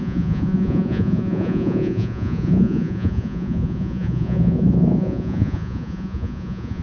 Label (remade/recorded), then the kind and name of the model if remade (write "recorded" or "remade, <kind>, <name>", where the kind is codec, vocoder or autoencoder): remade, vocoder, Vocos